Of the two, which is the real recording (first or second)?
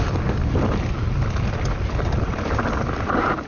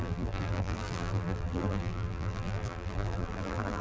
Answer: first